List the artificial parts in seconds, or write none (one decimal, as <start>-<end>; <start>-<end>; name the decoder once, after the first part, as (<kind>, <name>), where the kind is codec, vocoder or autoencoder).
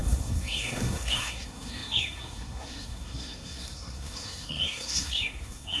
0.0-5.8 (codec, SNAC)